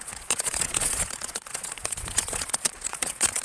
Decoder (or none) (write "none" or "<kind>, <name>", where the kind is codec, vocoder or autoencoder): vocoder, Vocos